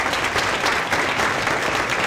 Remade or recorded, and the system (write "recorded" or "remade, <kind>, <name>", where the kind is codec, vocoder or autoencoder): recorded